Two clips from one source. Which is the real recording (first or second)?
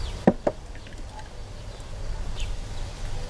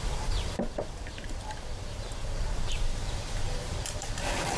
first